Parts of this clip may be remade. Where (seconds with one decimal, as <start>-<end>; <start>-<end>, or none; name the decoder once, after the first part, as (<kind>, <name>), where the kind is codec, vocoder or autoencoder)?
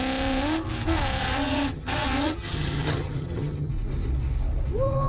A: 1.2-3.7 (vocoder, HiFi-GAN)